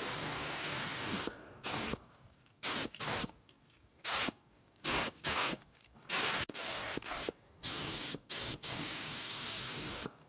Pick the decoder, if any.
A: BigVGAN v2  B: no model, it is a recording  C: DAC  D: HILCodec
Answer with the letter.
C